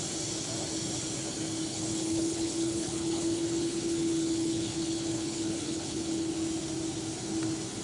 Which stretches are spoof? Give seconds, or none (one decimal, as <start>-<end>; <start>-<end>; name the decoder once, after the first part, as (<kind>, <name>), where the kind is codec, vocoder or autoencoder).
1.7-6.3 (codec, HILCodec)